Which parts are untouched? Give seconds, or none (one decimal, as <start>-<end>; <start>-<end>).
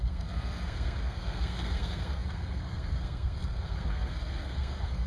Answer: none